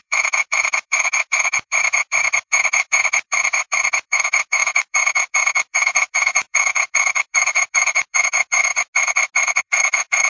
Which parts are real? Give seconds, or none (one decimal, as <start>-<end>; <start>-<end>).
8.7-9.6